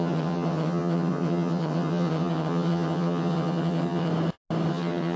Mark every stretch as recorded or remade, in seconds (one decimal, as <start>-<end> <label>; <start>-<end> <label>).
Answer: 0.0-4.1 remade; 4.1-4.7 recorded; 4.7-5.2 remade